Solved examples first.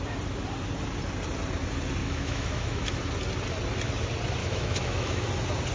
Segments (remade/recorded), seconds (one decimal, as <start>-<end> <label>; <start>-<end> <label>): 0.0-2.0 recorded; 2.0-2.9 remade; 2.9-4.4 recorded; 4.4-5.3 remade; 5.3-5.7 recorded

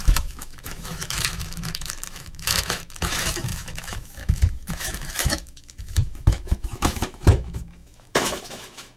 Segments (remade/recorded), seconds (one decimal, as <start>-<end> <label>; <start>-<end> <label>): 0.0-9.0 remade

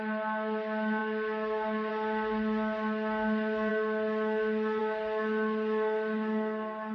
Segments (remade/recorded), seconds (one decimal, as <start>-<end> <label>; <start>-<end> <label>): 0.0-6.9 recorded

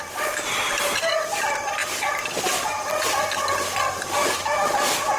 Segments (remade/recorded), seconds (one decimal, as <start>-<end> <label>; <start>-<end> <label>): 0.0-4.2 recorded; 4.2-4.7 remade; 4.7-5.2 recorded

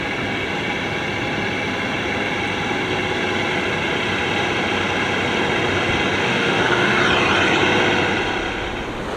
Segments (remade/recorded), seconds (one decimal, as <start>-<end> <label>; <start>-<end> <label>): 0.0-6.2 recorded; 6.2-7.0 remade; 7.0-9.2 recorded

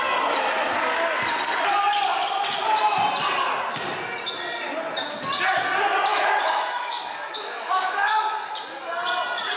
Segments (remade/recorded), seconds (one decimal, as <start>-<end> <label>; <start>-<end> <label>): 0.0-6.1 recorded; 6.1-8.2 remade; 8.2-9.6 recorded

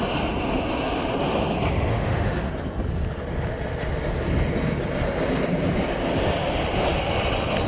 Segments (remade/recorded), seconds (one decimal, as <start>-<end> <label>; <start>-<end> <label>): 0.0-1.9 recorded; 1.9-2.5 remade; 2.5-7.7 recorded

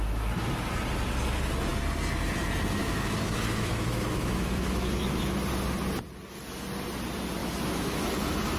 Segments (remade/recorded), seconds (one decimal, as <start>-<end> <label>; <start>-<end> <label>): 0.0-2.8 recorded; 2.8-5.2 remade; 5.2-7.4 recorded; 7.4-8.0 remade; 8.0-8.6 recorded